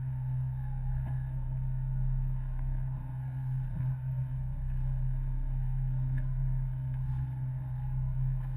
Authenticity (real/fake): fake